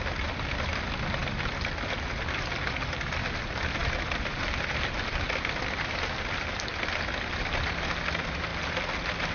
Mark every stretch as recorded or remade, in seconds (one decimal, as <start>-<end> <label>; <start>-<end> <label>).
0.0-9.3 recorded